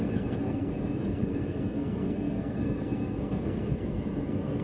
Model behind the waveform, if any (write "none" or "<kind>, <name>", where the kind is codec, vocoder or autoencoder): codec, SNAC